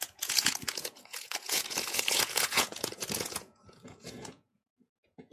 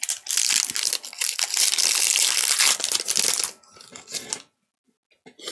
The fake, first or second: first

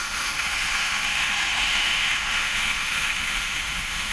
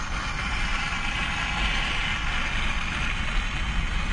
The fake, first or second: first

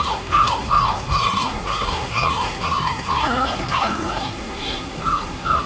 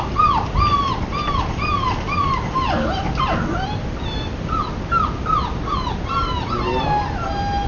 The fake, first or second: first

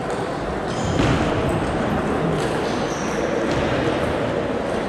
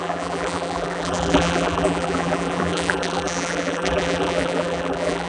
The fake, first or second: second